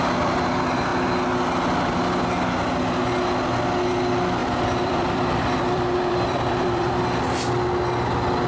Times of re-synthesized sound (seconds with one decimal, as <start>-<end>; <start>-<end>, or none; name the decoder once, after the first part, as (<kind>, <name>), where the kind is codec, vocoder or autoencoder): 4.4-6.9 (vocoder, BigVGAN v2)